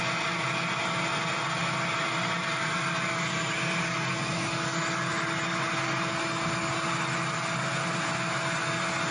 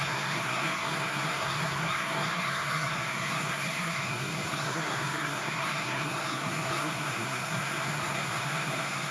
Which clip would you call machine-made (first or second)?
second